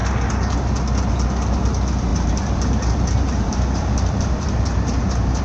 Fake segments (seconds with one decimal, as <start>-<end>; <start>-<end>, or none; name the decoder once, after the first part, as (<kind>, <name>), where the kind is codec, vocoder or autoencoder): 2.1-5.4 (vocoder, BigVGAN v2)